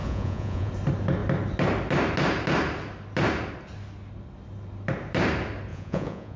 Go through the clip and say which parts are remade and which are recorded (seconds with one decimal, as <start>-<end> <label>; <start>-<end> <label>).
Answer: 0.0-0.7 remade; 0.7-5.7 recorded; 5.7-6.4 remade

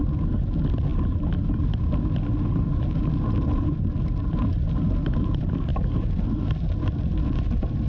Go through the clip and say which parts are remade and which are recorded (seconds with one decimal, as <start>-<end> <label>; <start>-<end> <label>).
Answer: 0.0-7.9 recorded

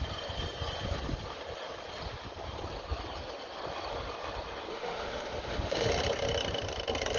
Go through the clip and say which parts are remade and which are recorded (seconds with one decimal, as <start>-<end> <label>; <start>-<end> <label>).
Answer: 0.0-4.7 recorded; 4.7-5.9 remade; 5.9-7.2 recorded